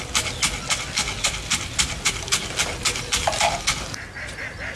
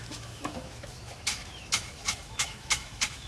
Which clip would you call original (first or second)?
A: first